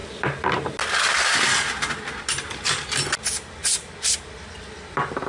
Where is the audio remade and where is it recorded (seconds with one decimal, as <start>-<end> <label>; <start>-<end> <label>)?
0.0-5.3 recorded